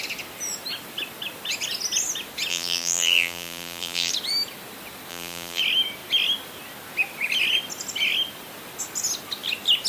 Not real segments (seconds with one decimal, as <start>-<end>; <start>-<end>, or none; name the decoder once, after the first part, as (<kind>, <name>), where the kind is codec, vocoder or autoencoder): 2.5-4.1 (vocoder, BigVGAN v2); 5.1-5.6